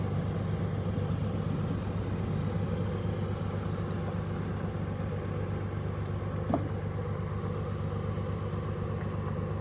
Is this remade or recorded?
recorded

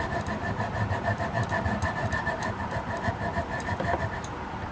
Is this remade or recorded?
remade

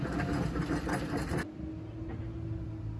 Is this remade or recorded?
recorded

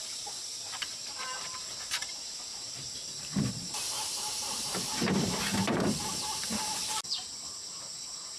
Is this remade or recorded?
remade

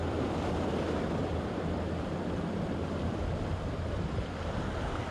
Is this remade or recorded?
remade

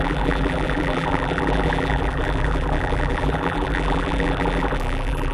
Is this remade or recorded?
remade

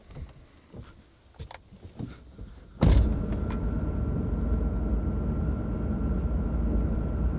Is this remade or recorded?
recorded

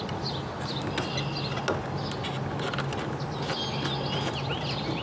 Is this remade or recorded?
recorded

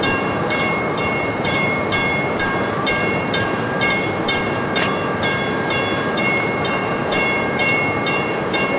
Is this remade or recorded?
remade